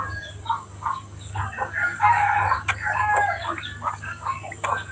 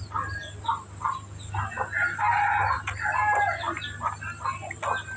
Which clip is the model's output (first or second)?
first